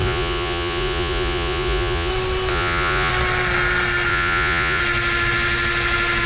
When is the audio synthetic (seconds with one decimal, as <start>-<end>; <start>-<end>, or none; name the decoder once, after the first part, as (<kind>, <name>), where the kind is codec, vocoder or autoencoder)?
0.0-2.1 (vocoder, Vocos); 2.5-3.1; 4.1-4.8